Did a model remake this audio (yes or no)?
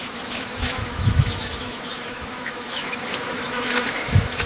yes